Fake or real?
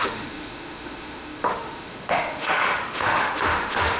fake